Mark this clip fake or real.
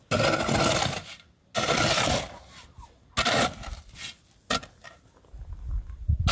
real